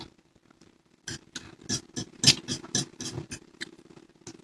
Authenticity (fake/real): real